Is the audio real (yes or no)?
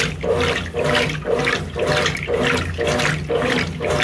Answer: yes